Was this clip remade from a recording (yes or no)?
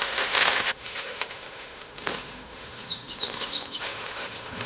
yes